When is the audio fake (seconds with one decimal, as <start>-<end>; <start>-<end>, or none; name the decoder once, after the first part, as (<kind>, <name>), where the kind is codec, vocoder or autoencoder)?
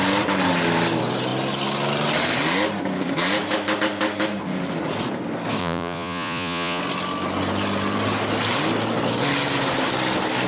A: 5.6-6.8 (vocoder, Vocos)